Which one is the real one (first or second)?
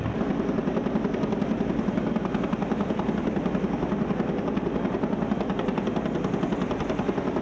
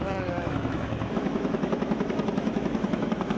first